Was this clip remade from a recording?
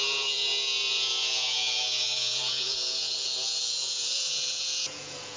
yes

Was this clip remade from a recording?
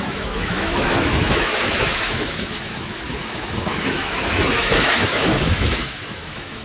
yes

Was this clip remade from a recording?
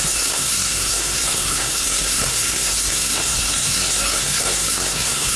yes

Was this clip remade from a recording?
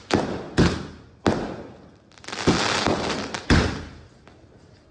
no